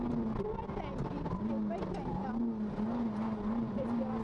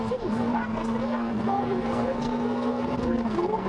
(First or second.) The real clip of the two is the first